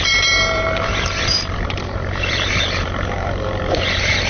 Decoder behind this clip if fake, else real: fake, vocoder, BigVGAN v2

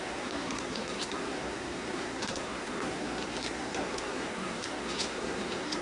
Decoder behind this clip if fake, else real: fake, codec, SNAC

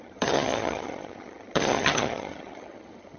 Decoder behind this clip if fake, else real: fake, vocoder, HiFi-GAN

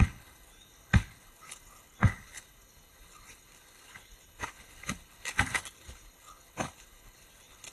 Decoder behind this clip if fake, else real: fake, codec, HILCodec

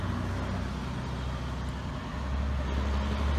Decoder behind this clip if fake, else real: real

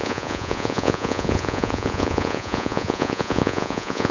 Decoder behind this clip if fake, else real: fake, vocoder, Vocos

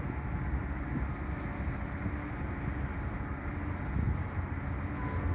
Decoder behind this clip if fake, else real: real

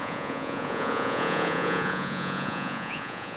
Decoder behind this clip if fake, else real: fake, vocoder, Vocos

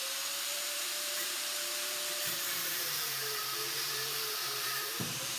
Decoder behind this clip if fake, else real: fake, vocoder, BigVGAN v2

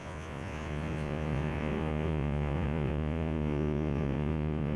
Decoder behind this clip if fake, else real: fake, vocoder, Vocos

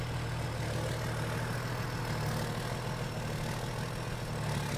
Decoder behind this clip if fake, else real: real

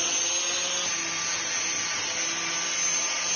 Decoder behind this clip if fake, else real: real